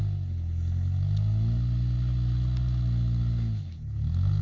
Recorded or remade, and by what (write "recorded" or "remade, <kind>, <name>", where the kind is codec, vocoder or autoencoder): recorded